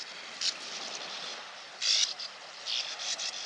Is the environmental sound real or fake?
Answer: real